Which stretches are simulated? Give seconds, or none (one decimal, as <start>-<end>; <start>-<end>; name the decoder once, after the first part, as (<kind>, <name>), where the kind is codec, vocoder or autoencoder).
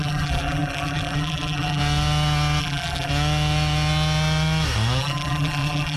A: 0.0-1.8 (vocoder, BigVGAN v2); 2.6-3.1; 5.0-6.0